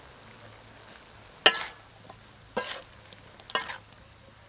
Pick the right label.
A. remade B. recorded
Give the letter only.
B